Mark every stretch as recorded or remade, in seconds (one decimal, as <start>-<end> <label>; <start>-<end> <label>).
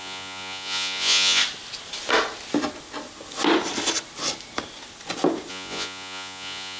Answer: 0.0-1.4 remade; 1.4-5.5 recorded; 5.5-6.8 remade